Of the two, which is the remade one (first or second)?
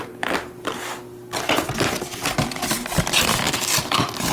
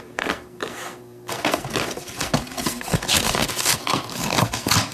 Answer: second